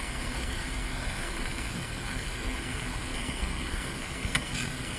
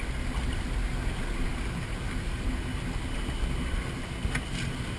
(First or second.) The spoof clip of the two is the first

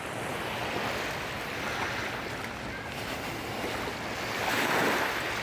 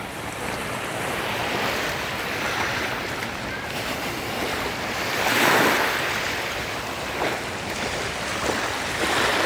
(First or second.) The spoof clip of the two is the second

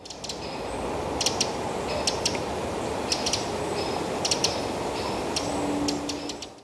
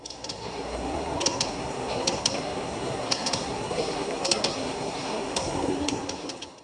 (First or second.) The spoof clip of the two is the second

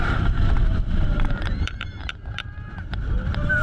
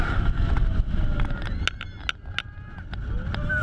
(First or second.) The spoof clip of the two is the first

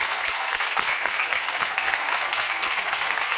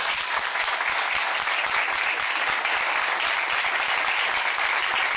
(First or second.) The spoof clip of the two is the first